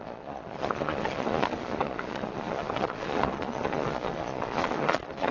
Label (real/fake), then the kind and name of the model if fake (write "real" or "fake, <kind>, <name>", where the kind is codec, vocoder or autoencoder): fake, vocoder, Vocos